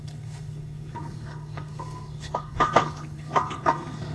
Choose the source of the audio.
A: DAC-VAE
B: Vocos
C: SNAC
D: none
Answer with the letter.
C